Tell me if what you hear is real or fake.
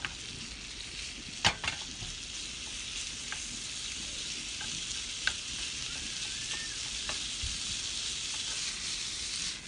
real